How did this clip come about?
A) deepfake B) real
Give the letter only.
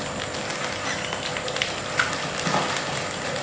B